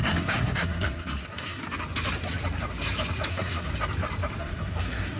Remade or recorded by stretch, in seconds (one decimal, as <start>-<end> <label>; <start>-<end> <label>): 0.0-1.6 remade; 1.6-3.3 recorded; 3.3-3.7 remade; 3.7-4.4 recorded; 4.4-5.2 remade